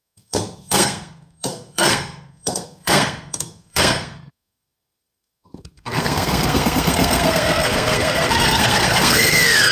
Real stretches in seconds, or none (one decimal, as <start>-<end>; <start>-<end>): none